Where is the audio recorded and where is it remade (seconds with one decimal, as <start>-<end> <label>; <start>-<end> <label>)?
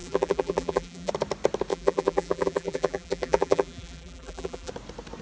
0.0-1.1 remade; 1.1-1.7 recorded; 1.7-4.7 remade; 4.7-5.2 recorded